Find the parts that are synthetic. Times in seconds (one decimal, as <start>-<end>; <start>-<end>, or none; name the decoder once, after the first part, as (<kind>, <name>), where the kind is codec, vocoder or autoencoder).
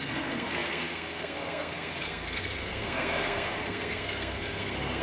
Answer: 0.0-5.0 (codec, SNAC)